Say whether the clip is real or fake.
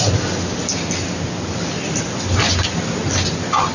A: real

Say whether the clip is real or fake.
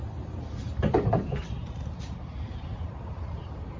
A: fake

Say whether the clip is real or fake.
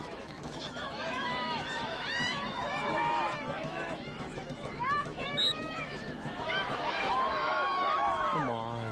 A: fake